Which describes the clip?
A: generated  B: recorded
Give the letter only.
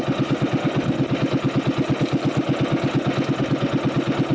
B